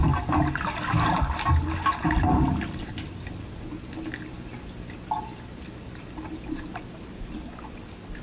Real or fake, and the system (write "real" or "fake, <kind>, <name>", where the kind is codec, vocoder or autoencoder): real